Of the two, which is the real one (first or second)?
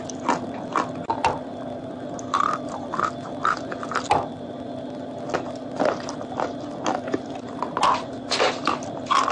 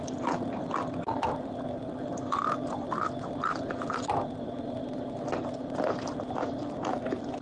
first